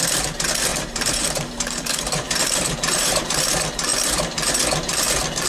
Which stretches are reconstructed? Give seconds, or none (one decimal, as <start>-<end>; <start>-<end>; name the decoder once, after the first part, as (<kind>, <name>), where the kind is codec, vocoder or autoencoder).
0.7-3.2 (vocoder, BigVGAN v2); 3.9-4.6